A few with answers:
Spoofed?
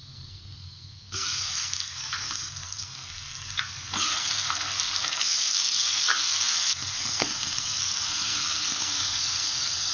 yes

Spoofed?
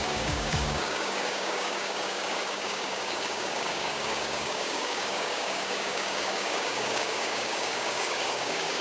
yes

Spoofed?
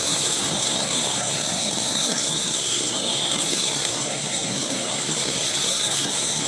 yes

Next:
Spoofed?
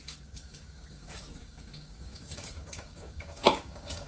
yes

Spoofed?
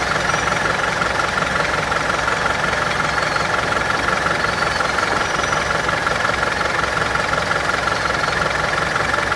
no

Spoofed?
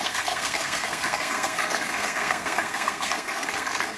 yes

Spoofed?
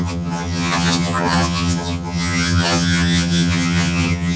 yes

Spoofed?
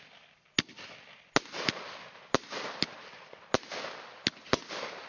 no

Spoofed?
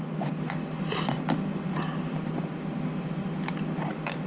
no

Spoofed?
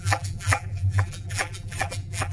yes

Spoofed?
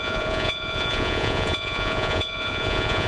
yes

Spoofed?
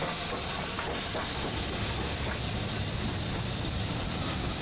no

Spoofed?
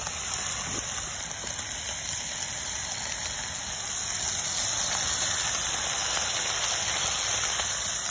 no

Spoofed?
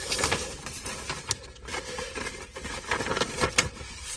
yes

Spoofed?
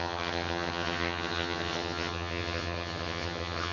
yes